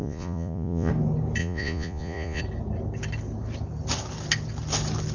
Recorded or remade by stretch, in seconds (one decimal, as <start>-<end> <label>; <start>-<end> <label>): 0.0-0.9 remade; 0.9-1.4 recorded; 1.4-2.4 remade; 2.4-5.1 recorded